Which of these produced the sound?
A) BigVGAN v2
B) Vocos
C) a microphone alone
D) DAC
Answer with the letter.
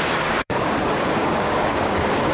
D